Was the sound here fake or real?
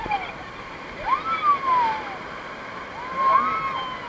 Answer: real